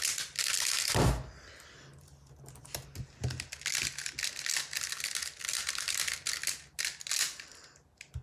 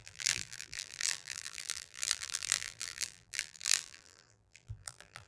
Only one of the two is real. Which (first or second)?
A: first